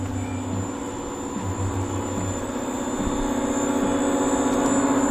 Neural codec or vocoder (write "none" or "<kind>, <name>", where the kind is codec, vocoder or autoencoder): none